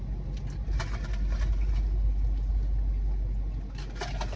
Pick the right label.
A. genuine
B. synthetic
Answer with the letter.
A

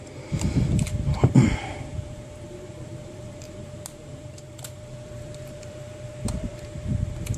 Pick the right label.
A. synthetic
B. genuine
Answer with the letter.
A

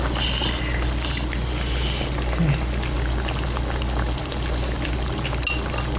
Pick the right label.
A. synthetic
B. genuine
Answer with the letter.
B